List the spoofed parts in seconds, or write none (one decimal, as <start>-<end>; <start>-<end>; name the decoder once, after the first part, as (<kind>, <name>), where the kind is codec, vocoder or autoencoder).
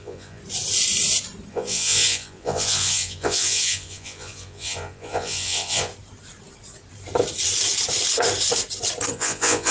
0.0-0.4 (vocoder, Vocos); 1.5-5.9; 9.1-9.7